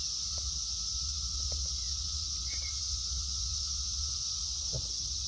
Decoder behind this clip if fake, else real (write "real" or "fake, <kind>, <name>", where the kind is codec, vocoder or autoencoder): fake, vocoder, Vocos